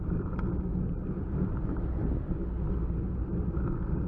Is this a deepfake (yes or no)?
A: no